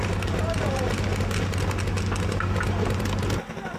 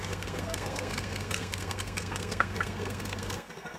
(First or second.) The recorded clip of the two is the first